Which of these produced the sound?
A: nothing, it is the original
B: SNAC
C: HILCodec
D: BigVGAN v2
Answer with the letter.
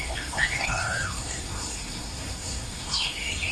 B